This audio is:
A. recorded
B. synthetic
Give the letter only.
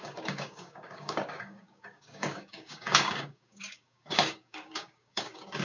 B